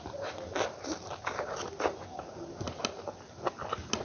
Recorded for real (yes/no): yes